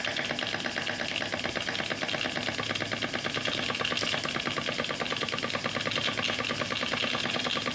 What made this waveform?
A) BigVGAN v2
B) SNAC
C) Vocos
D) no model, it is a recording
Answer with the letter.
D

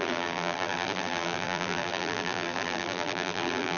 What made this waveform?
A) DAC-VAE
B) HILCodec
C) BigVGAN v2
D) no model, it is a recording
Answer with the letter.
C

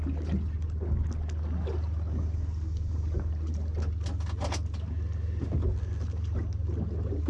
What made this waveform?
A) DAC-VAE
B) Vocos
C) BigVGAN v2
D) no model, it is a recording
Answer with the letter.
D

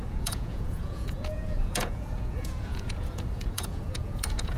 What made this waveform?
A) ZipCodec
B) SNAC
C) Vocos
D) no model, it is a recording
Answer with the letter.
C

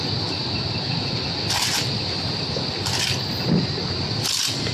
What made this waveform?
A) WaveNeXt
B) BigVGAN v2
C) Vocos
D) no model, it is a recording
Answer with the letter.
D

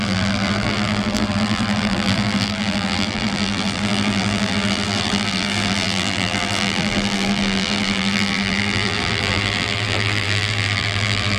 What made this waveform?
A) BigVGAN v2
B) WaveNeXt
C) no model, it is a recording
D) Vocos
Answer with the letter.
A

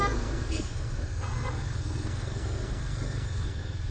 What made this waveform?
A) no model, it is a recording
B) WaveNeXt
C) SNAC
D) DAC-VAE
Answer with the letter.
C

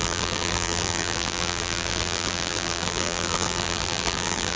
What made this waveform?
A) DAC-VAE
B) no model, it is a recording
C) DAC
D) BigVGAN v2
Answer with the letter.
D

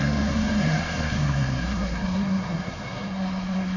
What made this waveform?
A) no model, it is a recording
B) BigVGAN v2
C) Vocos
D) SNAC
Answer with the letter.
D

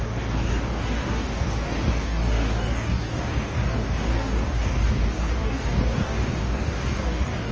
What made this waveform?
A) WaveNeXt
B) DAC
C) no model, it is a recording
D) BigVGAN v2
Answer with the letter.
B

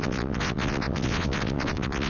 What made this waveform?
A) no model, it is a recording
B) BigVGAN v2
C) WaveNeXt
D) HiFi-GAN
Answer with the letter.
C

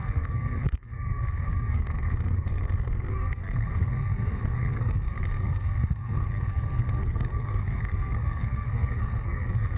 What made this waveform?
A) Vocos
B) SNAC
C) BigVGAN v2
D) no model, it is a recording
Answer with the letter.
B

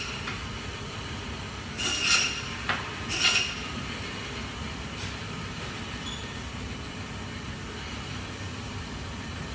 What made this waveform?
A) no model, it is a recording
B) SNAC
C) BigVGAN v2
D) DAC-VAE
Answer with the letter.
A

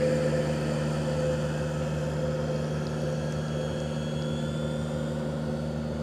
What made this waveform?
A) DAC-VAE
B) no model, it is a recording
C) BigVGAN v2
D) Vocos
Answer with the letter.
B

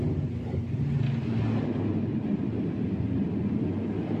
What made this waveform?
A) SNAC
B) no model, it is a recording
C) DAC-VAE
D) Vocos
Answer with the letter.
B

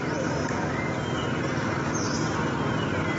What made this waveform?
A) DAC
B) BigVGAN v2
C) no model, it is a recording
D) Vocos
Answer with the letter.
C